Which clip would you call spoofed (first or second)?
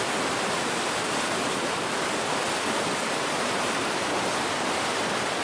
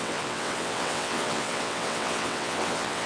second